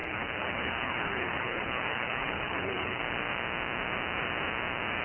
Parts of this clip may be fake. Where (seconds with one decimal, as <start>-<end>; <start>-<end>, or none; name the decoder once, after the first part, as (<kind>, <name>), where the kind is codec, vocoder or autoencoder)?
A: 0.0-3.0 (codec, HILCodec)

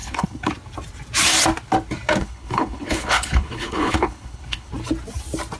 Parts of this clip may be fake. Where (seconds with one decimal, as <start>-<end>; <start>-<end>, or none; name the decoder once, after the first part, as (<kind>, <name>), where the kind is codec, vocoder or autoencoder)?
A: 0.0-0.5 (codec, HILCodec); 2.2-4.7